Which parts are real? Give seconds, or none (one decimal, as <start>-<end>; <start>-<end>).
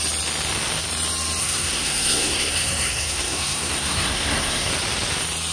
0.0-1.4; 4.7-5.5